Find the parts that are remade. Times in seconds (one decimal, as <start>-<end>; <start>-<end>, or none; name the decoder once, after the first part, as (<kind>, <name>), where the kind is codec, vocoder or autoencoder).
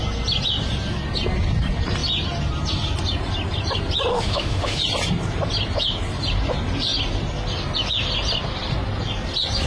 4.1-4.8 (autoencoder, DAC-VAE)